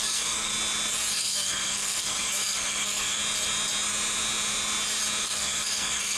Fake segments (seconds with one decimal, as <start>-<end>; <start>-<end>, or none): 0.0-0.5; 1.1-3.2; 5.2-6.2